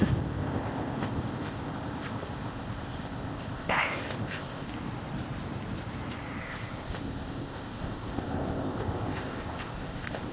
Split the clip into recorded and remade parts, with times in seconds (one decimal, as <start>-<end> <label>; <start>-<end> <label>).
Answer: 0.0-4.7 remade; 4.7-6.4 recorded; 6.4-10.3 remade